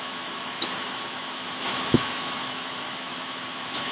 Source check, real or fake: fake